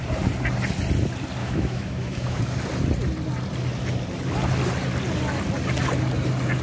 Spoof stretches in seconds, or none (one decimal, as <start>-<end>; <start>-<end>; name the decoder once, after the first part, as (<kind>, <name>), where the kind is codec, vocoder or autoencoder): 1.4-2.4 (autoencoder, DAC-VAE)